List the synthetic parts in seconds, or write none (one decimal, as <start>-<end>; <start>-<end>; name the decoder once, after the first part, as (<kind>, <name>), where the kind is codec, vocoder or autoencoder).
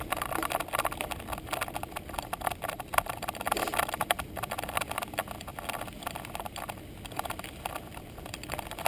none